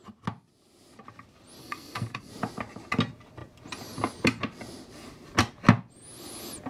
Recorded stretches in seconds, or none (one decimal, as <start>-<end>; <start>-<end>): 0.0-1.6; 2.3-6.7